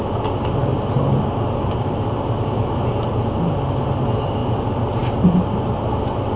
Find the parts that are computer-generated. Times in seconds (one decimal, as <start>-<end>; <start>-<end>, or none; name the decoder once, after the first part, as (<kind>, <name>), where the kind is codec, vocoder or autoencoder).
0.7-3.0 (vocoder, BigVGAN v2); 4.4-5.1